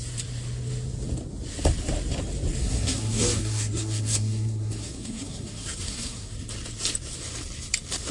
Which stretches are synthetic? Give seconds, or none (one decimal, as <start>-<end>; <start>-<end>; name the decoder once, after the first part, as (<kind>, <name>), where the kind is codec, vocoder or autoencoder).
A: 2.6-6.3 (codec, SNAC)